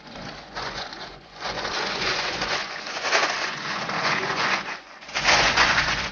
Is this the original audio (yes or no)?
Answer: no